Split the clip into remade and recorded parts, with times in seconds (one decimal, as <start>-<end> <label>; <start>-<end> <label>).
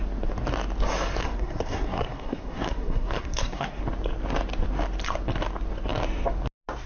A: 0.0-1.2 recorded; 1.2-3.8 remade; 3.8-6.9 recorded